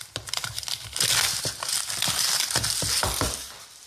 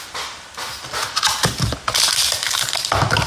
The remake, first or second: first